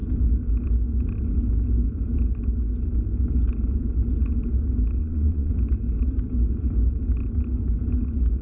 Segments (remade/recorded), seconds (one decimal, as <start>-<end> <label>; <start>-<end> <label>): 0.0-5.0 recorded; 5.0-5.5 remade; 5.5-8.4 recorded